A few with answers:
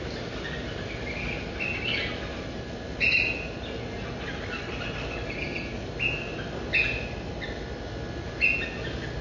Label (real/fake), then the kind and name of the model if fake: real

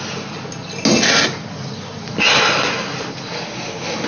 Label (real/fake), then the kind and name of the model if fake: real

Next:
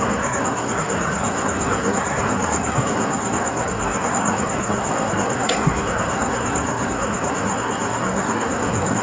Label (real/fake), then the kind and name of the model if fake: fake, codec, SNAC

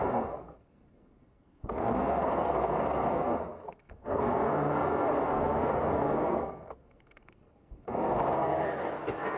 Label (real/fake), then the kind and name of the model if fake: fake, codec, SNAC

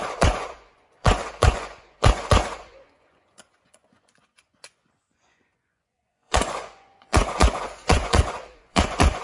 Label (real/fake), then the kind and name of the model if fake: fake, vocoder, Vocos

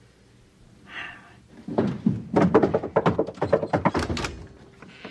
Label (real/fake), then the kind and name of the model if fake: real